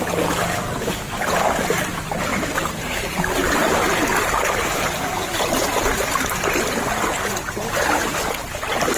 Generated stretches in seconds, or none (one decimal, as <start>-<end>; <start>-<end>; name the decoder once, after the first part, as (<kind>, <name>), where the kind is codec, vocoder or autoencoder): none

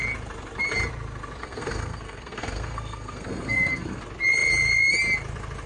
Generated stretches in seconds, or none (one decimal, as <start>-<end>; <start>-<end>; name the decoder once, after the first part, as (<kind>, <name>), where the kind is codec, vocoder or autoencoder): 1.4-4.0 (codec, SNAC)

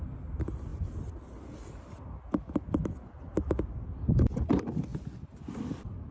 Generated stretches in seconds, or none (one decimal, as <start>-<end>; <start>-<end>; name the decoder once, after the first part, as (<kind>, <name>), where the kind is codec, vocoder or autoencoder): none